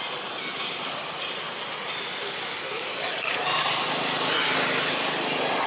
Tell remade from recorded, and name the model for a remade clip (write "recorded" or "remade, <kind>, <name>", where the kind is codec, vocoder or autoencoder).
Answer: recorded